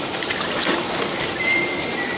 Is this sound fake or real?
real